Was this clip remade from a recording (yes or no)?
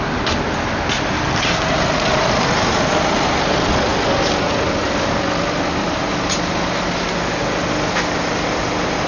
no